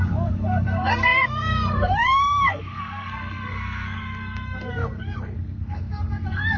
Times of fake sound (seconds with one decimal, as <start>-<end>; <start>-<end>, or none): 0.0-6.6